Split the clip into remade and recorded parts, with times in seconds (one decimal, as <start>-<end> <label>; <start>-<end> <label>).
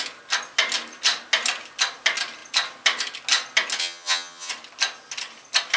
0.0-3.8 recorded; 3.8-4.5 remade; 4.5-5.8 recorded